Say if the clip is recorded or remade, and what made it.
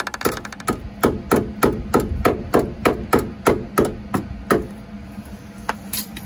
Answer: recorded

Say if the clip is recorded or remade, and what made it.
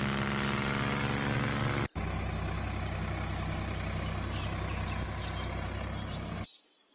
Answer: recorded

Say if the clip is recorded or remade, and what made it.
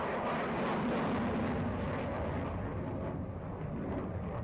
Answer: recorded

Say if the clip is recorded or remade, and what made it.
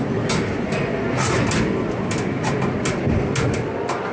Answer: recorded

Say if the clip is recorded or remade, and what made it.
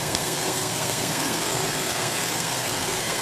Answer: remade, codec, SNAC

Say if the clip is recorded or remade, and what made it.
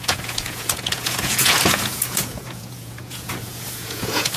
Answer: remade, vocoder, Vocos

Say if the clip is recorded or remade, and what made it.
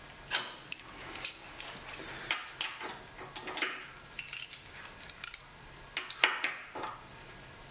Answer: recorded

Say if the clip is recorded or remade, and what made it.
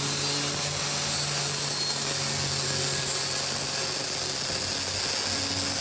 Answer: recorded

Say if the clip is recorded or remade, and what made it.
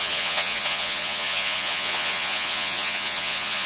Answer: remade, vocoder, Vocos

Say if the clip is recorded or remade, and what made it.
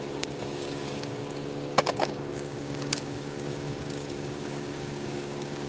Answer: remade, codec, DAC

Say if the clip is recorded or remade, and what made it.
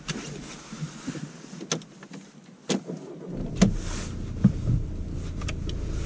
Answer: recorded